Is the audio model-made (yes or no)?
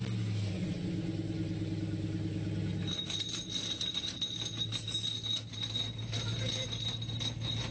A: no